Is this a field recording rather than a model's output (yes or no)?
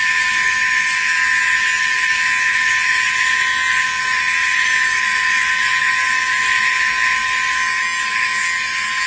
yes